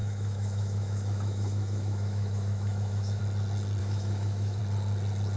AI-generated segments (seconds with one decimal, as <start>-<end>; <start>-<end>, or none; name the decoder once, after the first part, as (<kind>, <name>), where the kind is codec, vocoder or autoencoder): 0.0-3.2 (autoencoder, DAC-VAE); 3.8-4.6